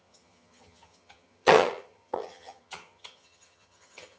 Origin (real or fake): fake